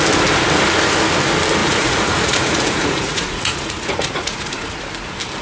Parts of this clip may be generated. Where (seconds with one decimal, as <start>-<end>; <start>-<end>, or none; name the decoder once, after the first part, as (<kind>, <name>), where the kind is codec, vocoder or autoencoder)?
1.6-4.8 (vocoder, Vocos)